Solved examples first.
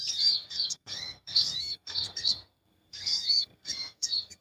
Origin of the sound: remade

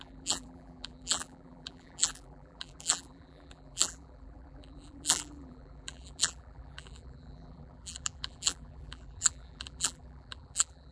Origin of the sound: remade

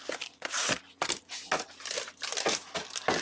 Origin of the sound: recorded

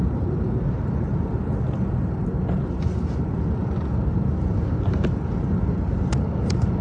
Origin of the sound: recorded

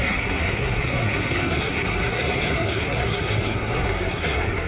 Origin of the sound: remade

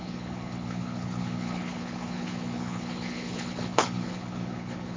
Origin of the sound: remade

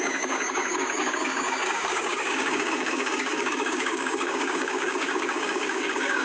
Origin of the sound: remade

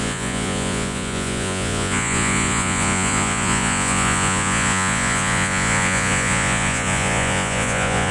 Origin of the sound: remade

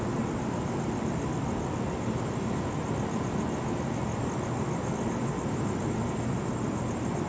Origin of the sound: recorded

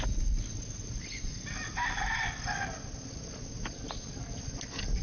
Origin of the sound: recorded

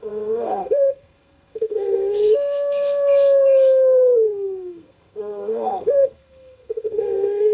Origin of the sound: remade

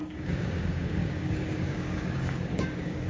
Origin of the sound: remade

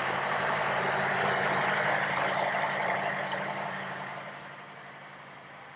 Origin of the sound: remade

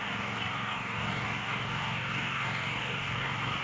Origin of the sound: remade